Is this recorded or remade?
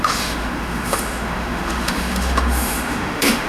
remade